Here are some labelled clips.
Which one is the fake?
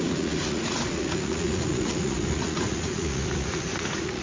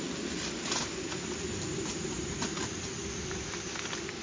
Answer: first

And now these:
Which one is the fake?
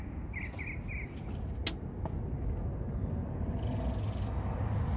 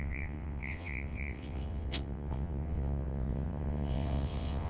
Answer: second